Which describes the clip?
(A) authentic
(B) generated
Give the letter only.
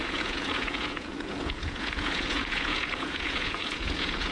B